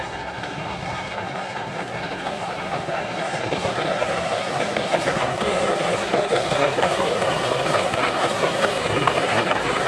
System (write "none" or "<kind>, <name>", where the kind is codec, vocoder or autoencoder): codec, SNAC